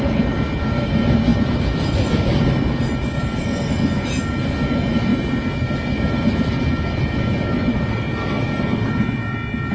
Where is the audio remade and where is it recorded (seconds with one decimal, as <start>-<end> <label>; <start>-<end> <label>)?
0.0-9.7 recorded